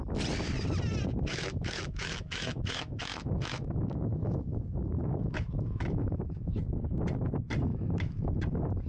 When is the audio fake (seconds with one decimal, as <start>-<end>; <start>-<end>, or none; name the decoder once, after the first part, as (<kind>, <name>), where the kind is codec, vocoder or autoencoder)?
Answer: 1.3-6.6 (autoencoder, DAC-VAE); 7.7-8.3